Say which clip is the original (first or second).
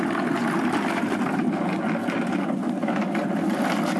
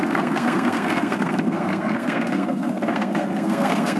first